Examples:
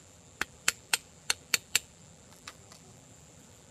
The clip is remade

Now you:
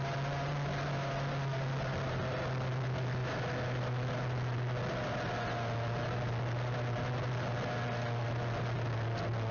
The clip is recorded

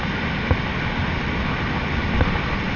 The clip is recorded